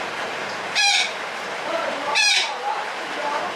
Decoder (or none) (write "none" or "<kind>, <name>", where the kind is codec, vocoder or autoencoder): none